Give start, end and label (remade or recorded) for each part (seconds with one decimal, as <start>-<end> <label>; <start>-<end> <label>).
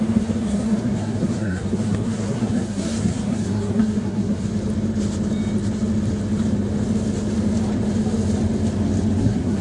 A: 0.0-4.5 remade; 4.5-9.2 recorded; 9.2-9.6 remade